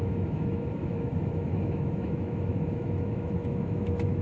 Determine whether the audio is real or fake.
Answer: fake